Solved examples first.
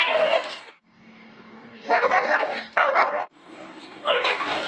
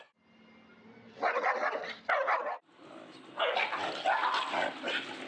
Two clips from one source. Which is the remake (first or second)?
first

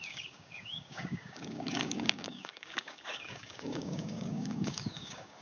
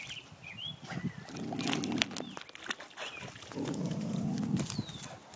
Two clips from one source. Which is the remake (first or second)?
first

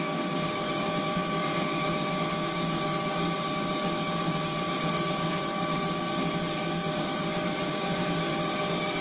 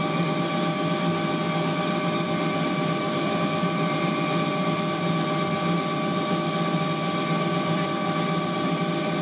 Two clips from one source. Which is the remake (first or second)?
first